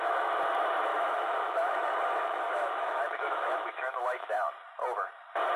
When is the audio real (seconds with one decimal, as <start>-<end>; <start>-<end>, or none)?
0.0-0.9; 4.3-5.6